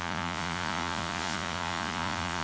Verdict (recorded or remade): remade